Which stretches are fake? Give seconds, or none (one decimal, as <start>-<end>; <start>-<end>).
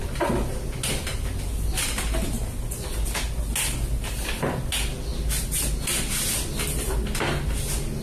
none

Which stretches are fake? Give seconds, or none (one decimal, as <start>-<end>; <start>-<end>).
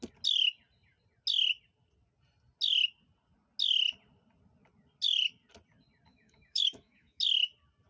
6.1-7.2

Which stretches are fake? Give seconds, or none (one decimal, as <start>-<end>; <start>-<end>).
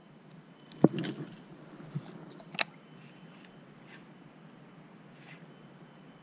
none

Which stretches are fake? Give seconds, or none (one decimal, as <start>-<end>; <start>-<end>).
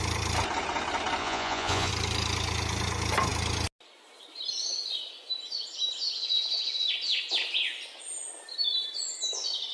1.2-1.9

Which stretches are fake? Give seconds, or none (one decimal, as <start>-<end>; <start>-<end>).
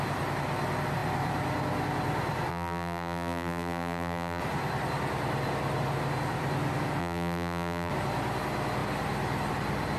2.5-4.4; 7.0-7.9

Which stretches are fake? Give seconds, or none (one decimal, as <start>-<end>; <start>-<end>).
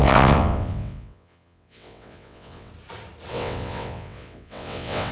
0.0-2.7; 3.3-5.1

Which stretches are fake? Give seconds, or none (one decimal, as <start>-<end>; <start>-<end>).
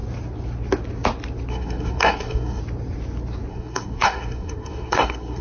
1.5-2.6; 3.5-5.4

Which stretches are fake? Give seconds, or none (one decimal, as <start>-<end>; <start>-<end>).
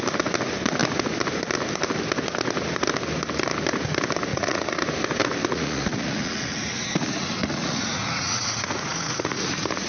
4.3-4.8; 5.5-9.9